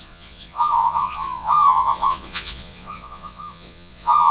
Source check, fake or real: fake